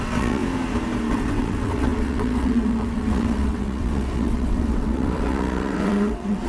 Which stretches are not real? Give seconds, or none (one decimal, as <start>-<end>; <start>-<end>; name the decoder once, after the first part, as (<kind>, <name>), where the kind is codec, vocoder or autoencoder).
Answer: 0.0-0.4 (vocoder, WaveNeXt); 1.1-6.5

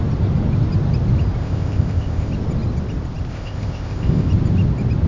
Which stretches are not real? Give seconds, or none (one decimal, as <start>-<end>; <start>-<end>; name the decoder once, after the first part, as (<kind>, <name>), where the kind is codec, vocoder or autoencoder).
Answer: 1.4-2.3 (codec, ZipCodec); 3.3-4.3